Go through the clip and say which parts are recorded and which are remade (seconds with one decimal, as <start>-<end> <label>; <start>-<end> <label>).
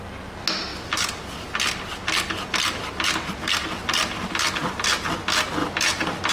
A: 0.0-0.7 recorded; 0.7-4.5 remade; 4.5-5.6 recorded; 5.6-6.3 remade